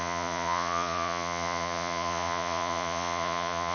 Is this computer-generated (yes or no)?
yes